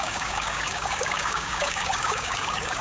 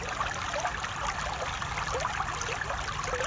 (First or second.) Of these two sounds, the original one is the second